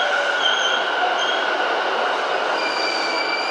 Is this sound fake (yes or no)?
no